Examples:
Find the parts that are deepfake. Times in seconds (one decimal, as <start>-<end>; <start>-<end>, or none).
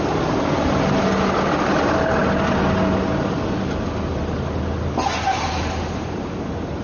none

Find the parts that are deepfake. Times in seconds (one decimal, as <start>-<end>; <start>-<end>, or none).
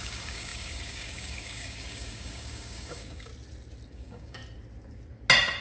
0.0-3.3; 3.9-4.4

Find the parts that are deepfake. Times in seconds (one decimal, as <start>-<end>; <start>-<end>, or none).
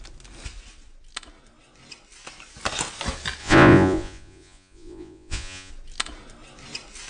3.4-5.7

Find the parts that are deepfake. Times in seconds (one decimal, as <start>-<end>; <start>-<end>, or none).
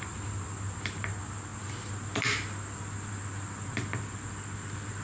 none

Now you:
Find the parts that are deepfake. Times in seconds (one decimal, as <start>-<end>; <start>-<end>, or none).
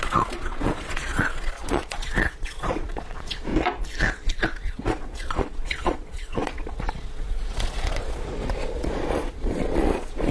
0.0-3.5; 4.4-10.3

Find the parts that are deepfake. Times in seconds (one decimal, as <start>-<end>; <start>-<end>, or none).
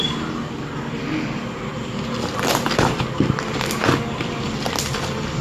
none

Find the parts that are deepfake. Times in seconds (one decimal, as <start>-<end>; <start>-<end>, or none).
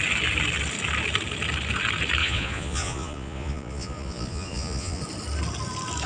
2.2-5.0